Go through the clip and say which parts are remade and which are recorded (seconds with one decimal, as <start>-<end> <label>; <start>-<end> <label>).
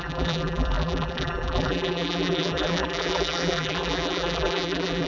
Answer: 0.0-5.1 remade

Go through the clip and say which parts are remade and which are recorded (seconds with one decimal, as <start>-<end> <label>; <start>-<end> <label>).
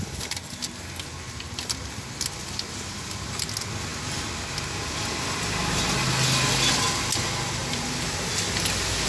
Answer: 0.0-7.6 recorded; 7.6-8.3 remade; 8.3-9.1 recorded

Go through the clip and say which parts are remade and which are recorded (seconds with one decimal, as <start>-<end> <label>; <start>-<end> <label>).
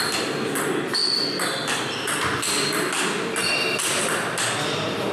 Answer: 0.0-1.0 remade; 1.0-4.1 recorded; 4.1-5.1 remade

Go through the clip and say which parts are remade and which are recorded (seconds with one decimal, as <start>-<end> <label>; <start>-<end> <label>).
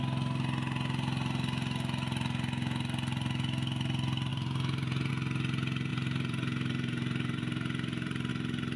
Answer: 0.0-4.3 recorded; 4.3-5.1 remade; 5.1-5.9 recorded; 5.9-8.3 remade; 8.3-8.8 recorded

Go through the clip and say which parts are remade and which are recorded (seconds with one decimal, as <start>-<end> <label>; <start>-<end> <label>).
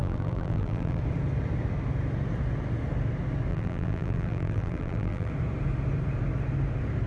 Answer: 0.0-1.0 remade; 1.0-3.5 recorded; 3.5-5.3 remade; 5.3-7.1 recorded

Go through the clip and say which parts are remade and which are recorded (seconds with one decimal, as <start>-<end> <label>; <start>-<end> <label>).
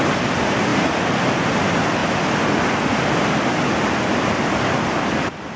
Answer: 0.0-5.6 recorded